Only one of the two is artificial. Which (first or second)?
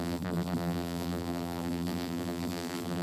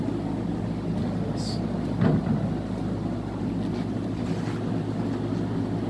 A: first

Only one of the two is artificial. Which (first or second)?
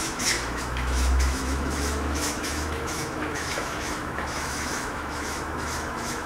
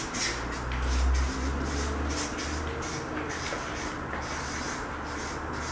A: first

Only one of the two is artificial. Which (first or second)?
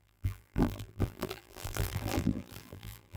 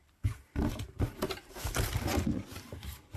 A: first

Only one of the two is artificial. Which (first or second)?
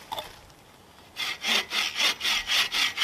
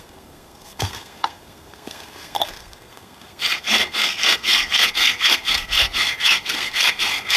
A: second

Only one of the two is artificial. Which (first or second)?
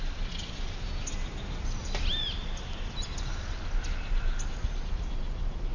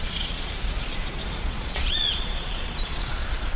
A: second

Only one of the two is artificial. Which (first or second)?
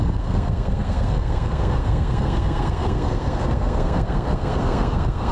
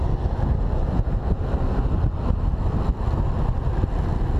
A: first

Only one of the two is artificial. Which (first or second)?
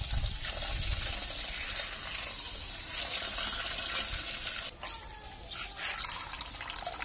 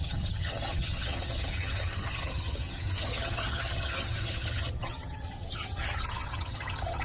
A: second